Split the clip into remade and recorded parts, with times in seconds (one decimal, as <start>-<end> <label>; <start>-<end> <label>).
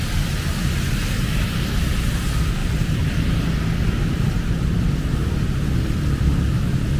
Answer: 0.0-2.6 recorded; 2.6-3.4 remade; 3.4-7.0 recorded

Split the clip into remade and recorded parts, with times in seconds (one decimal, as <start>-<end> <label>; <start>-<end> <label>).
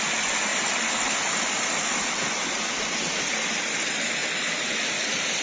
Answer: 0.0-5.4 recorded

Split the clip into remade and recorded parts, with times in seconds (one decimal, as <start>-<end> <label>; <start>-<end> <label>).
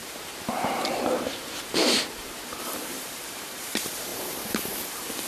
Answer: 0.0-5.3 remade